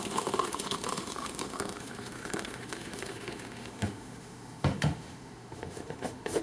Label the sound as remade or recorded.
remade